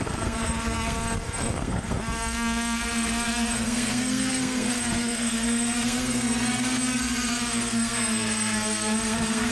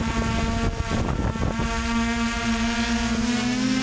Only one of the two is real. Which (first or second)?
second